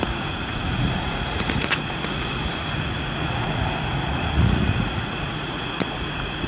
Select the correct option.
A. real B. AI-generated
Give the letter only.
B